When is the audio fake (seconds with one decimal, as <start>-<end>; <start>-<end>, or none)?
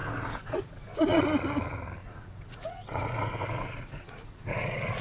0.0-1.2; 2.0-5.0